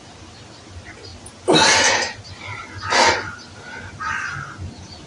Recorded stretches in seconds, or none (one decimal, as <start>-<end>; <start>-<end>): 0.0-5.1